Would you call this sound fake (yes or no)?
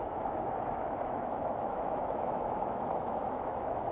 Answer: yes